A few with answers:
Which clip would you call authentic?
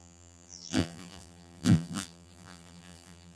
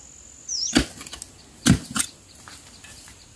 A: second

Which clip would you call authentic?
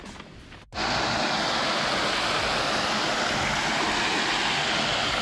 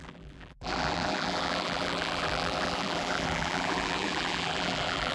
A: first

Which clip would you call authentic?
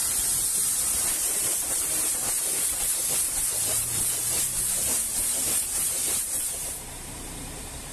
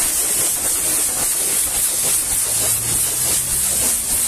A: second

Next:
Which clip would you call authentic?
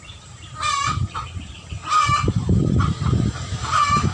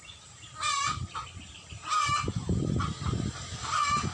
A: second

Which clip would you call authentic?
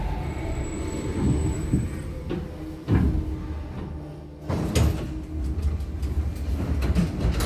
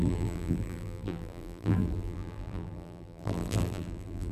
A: first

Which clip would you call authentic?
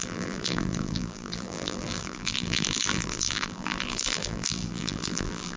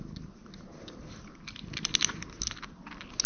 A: second